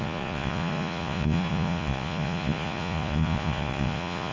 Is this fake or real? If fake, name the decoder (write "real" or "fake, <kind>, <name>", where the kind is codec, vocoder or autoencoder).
fake, vocoder, Vocos